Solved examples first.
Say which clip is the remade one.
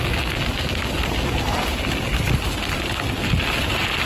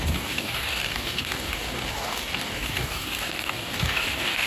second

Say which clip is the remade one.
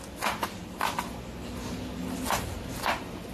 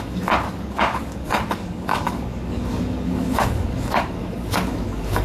second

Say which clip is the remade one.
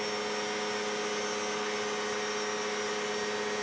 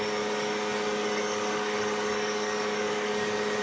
second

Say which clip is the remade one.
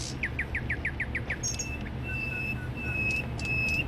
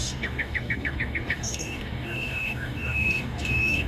second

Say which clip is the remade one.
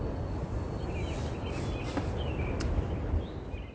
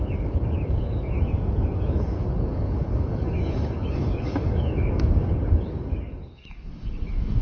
second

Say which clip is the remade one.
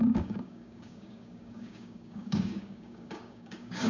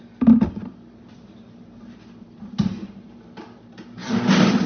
first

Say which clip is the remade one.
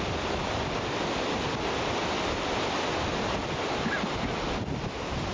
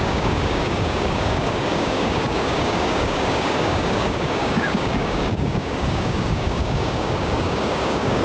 second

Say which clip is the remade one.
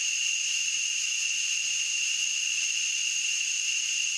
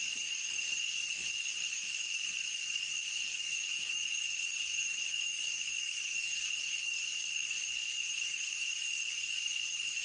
second